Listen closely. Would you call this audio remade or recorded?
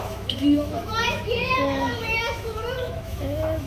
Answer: remade